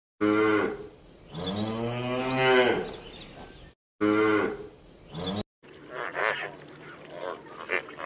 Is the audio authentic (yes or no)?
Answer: yes